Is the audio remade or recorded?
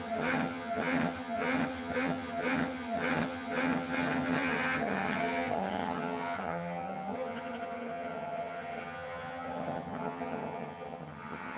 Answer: remade